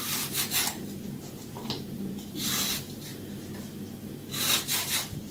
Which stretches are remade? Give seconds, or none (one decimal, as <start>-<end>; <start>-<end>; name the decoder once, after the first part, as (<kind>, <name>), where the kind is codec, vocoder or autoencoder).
0.0-3.1 (vocoder, BigVGAN v2); 4.4-5.3

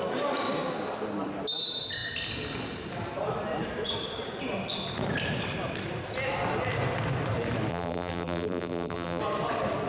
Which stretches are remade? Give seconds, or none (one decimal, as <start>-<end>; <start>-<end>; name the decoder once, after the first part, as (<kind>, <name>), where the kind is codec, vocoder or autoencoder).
7.7-9.2 (vocoder, BigVGAN v2)

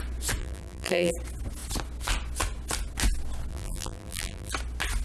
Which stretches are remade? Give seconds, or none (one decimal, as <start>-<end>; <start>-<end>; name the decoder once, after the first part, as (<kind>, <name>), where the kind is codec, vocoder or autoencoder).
0.4-1.1 (vocoder, BigVGAN v2); 3.5-4.5

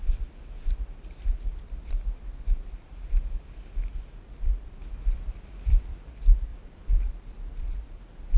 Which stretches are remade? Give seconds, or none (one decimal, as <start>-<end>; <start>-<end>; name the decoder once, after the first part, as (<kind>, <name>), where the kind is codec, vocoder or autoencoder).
4.8-6.1 (vocoder, BigVGAN v2); 6.5-7.1